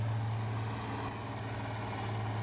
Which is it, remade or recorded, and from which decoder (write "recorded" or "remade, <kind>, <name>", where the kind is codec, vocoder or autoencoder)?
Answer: recorded